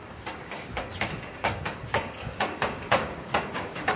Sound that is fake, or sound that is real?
fake